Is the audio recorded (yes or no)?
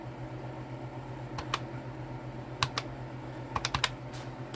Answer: yes